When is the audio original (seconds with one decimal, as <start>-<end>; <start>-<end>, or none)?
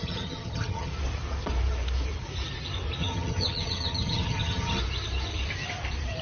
0.9-3.0; 4.8-6.2